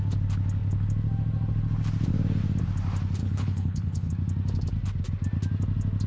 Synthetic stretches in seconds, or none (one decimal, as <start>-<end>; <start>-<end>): 3.2-4.1